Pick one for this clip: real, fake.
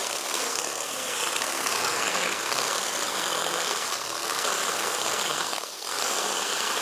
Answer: fake